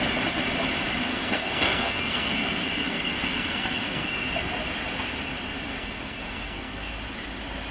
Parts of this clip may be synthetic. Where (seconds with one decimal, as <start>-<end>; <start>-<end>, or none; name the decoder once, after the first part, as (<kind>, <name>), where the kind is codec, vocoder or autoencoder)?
1.1-4.3 (codec, SNAC); 5.7-6.9